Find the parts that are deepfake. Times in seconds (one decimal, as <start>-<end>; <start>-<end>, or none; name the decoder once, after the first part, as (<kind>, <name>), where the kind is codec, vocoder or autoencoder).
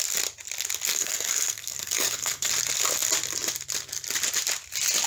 0.9-2.5 (codec, SNAC)